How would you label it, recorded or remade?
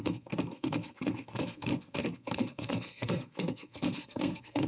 remade